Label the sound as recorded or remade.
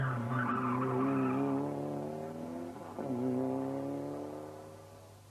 recorded